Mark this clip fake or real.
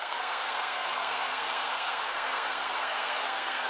fake